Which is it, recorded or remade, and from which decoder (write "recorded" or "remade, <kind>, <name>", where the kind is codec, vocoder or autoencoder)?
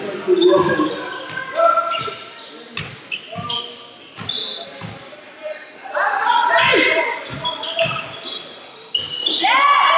recorded